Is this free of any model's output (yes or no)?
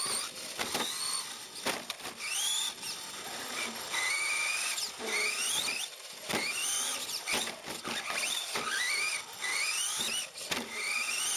yes